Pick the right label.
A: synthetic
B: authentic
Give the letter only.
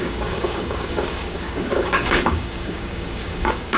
A